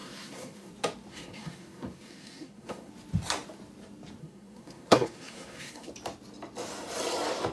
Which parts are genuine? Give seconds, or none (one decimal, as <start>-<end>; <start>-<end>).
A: 0.7-1.1; 2.9-4.2; 5.9-7.5